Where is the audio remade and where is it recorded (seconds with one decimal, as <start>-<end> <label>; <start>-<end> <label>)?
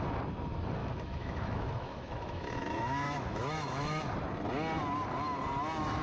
0.0-0.8 recorded; 0.8-4.0 remade; 4.0-6.0 recorded